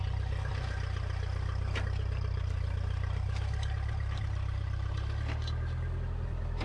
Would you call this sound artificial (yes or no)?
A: no